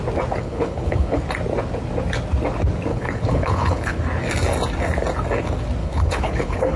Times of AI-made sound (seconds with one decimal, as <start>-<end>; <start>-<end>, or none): 0.4-1.2; 2.9-4.0; 5.8-6.8